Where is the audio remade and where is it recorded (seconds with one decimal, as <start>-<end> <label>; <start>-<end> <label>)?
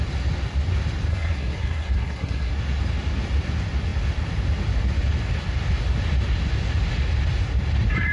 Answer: 0.0-1.1 recorded; 1.1-2.5 remade; 2.5-8.1 recorded